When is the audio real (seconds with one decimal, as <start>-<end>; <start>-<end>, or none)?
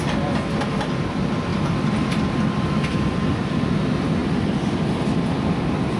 0.0-6.0